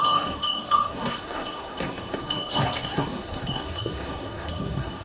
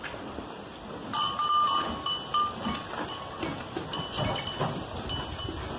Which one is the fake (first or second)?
first